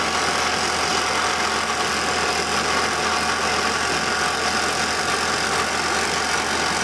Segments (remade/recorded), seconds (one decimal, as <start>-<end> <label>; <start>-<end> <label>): 0.0-6.8 recorded